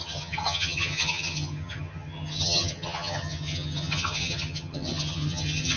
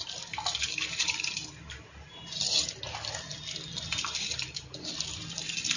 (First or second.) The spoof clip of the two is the first